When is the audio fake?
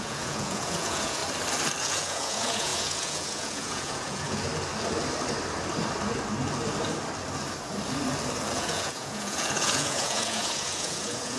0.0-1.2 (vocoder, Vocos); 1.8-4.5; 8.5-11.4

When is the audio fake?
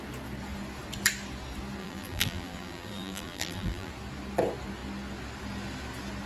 1.8-3.9 (vocoder, BigVGAN v2)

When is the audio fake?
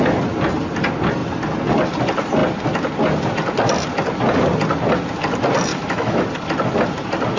5.7-6.2 (autoencoder, DAC-VAE)